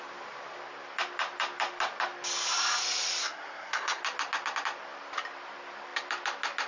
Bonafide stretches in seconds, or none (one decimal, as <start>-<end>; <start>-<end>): 0.0-3.2; 4.0-6.7